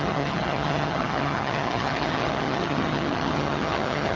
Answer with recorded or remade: remade